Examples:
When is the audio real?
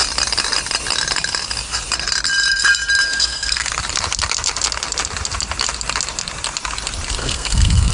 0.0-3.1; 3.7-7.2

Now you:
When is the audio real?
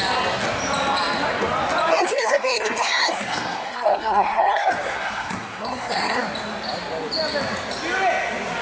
0.0-1.9; 6.2-8.6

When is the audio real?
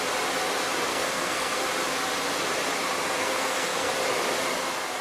0.0-0.9; 1.7-3.2; 3.9-5.0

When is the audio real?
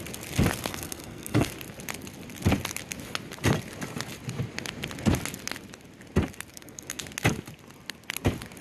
0.0-0.7; 1.5-6.5; 7.0-8.6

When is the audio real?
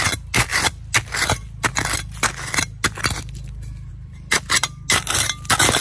0.0-5.8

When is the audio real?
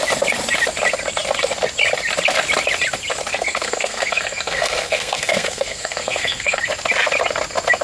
0.0-3.3; 6.6-7.8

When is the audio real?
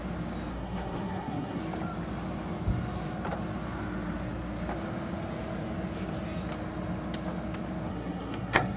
0.0-0.5; 1.6-7.9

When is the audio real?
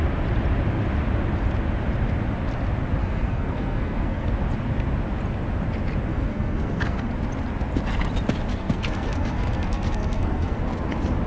0.0-3.0; 4.3-6.1; 7.1-8.5; 10.6-11.3